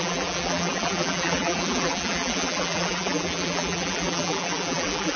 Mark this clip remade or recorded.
remade